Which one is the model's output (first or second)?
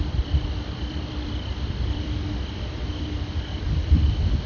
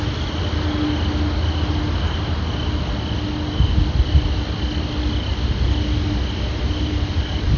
first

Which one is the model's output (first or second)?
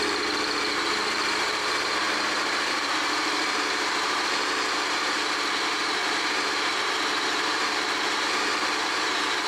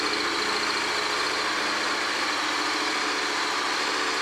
first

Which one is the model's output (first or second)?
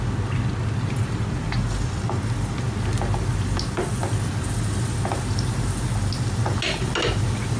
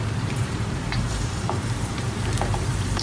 second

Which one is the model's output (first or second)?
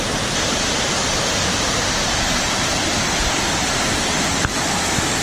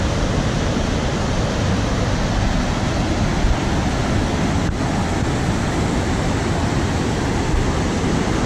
first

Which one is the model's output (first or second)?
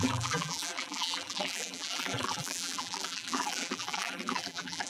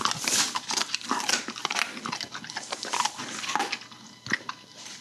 first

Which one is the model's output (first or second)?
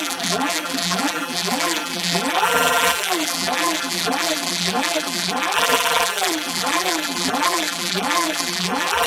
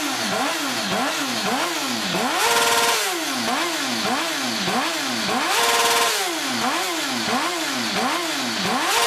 first